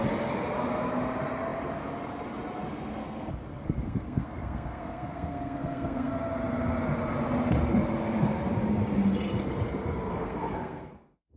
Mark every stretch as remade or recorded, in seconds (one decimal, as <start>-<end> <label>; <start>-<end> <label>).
0.0-3.0 recorded; 3.0-6.1 remade; 6.1-10.1 recorded; 10.1-11.4 remade